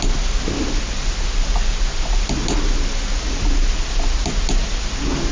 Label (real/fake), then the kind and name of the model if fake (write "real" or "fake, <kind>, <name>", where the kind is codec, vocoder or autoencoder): real